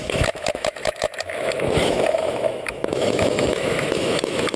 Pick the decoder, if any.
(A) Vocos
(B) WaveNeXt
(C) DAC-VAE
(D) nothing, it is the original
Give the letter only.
C